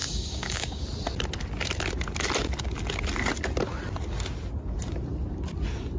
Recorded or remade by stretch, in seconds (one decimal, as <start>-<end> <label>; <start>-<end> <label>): 0.0-0.8 remade; 0.8-6.0 recorded